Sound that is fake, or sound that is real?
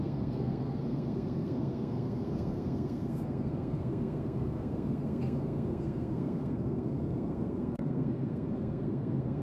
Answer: fake